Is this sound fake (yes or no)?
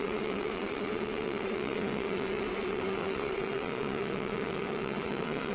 yes